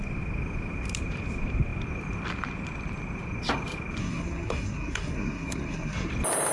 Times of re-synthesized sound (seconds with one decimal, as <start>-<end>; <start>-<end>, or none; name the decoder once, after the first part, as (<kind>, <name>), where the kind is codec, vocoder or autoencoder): 4.0-6.1 (codec, SNAC)

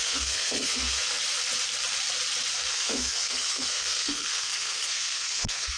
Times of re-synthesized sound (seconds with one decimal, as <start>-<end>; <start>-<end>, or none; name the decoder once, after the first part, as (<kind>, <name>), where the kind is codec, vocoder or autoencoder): 0.0-1.0 (codec, SNAC); 2.7-5.8

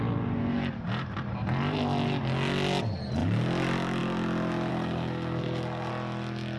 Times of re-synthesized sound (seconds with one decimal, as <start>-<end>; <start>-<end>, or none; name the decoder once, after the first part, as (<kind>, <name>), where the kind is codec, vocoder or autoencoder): 4.7-5.9 (codec, SNAC)